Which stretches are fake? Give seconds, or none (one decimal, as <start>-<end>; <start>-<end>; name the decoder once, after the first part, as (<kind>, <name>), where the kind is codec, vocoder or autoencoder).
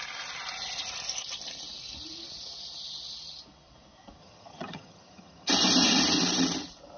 4.2-5.5 (vocoder, HiFi-GAN)